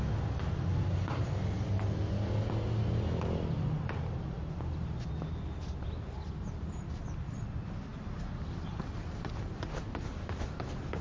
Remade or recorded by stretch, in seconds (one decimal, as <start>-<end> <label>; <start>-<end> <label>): 0.0-11.0 recorded